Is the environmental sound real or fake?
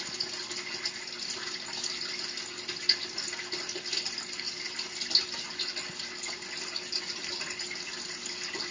real